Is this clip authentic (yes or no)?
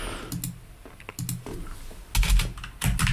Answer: yes